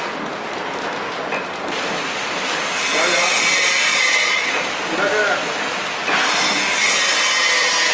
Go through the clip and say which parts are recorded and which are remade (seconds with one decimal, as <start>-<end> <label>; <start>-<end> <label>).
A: 0.0-3.9 recorded; 3.9-4.5 remade; 4.5-7.9 recorded